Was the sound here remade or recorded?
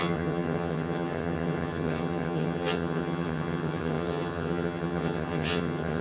remade